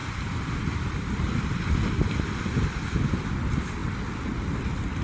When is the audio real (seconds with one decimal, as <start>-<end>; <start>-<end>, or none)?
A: 3.0-5.0